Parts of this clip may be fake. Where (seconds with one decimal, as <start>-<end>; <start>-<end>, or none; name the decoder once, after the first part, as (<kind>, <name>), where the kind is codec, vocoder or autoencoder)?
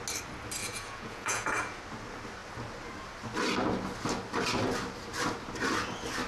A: 0.6-1.8 (vocoder, Vocos)